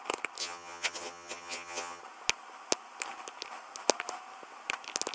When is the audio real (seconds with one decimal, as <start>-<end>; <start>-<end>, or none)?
0.0-0.4; 2.0-5.1